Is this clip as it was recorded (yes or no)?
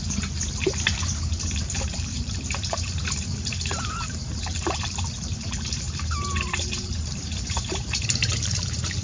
no